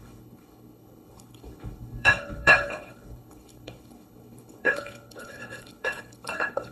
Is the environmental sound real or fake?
fake